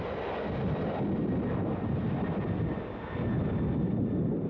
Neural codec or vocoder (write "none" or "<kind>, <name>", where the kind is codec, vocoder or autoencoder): none